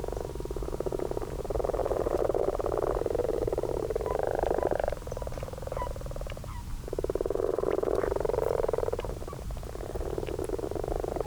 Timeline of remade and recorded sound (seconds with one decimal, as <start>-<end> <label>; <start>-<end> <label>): 0.0-1.8 recorded; 1.8-2.4 remade; 2.4-3.2 recorded; 3.2-5.9 remade; 5.9-6.4 recorded; 6.4-11.3 remade